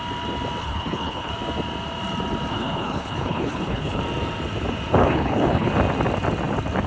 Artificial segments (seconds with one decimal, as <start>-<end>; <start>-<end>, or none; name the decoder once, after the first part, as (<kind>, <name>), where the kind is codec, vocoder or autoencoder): 0.6-1.3 (codec, HILCodec); 2.5-4.0; 5.0-5.7

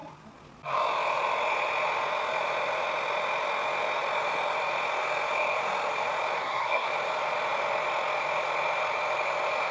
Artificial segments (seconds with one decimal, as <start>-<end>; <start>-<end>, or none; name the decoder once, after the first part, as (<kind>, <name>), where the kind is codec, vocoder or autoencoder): 6.4-6.9 (codec, SNAC)